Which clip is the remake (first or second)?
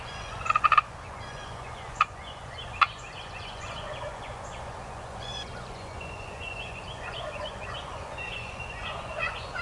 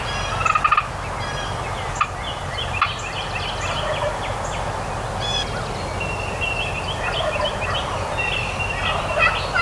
first